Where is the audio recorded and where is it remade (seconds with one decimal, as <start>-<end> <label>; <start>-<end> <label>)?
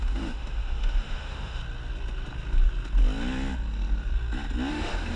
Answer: 0.0-1.6 remade; 1.6-4.7 recorded; 4.7-5.2 remade